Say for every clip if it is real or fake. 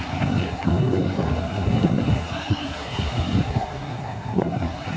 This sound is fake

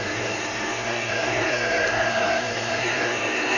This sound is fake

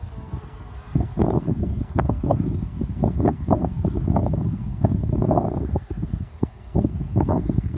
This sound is fake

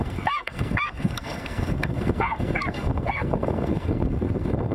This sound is fake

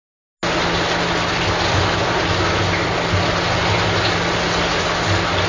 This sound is real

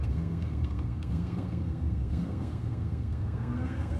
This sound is fake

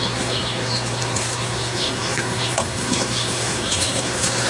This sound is fake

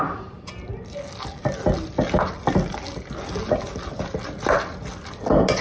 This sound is real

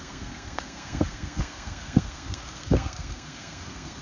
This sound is fake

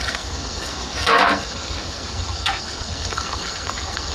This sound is fake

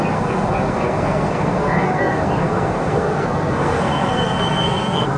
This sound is fake